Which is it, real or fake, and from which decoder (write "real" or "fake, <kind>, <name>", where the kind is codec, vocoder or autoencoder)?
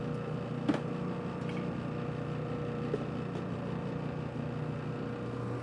real